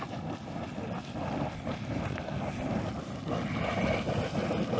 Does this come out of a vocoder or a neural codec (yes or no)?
no